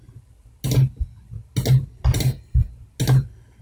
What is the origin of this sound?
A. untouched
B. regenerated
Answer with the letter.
A